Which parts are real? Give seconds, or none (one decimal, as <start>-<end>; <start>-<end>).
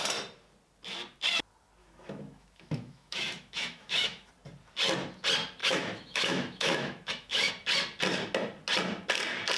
0.0-1.8; 4.3-5.6; 7.5-9.6